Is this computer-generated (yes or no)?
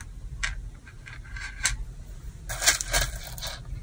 no